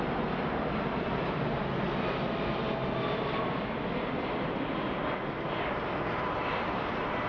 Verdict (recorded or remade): recorded